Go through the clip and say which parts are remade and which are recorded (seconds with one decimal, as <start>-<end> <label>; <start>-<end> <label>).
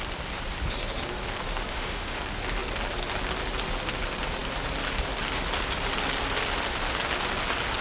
0.0-1.7 recorded; 1.7-2.2 remade; 2.2-7.8 recorded